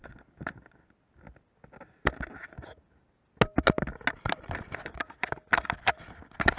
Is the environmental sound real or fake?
real